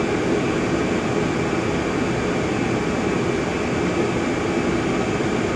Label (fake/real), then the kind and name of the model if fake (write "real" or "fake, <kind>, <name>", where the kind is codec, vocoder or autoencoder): real